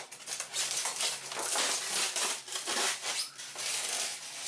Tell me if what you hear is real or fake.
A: real